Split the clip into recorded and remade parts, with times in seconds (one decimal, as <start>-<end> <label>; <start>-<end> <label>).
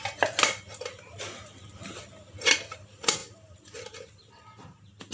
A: 0.0-5.1 recorded